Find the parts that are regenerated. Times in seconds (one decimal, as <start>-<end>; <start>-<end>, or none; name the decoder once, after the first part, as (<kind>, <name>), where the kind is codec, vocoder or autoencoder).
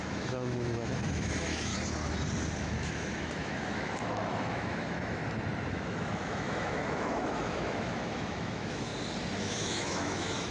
0.0-1.7 (autoencoder, DAC-VAE); 2.6-5.2; 5.7-8.9; 9.4-10.5